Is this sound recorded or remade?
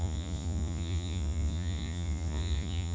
remade